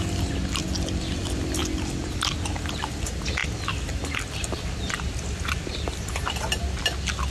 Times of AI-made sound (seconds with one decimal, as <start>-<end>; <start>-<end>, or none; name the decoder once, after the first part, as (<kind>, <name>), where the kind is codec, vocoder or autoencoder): none

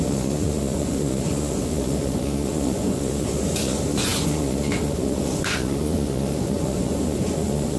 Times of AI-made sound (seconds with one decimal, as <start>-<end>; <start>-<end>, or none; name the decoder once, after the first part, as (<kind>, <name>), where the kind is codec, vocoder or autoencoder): 0.0-7.8 (vocoder, Vocos)

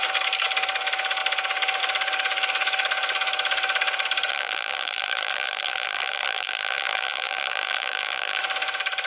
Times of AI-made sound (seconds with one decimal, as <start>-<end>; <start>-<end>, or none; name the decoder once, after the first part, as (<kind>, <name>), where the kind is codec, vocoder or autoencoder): 4.3-8.4 (vocoder, BigVGAN v2)

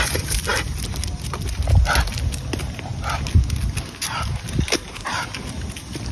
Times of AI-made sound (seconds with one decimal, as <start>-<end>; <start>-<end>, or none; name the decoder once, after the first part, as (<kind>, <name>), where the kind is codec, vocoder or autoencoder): none

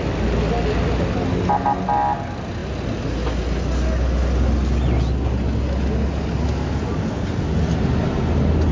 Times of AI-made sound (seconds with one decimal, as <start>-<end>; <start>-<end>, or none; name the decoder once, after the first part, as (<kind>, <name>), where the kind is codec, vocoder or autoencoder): none

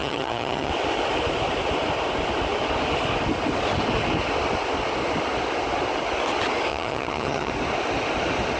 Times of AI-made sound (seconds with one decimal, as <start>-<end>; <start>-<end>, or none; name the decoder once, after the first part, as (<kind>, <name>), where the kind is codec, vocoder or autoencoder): 0.0-0.7 (vocoder, HiFi-GAN); 6.7-7.5

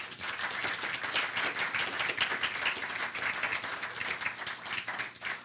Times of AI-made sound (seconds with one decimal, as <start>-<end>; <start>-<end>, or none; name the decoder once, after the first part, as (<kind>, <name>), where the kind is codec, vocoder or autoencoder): none